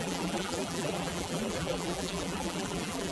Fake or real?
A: fake